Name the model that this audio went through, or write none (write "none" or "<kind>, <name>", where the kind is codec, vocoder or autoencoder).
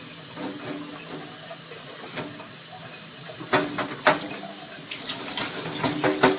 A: none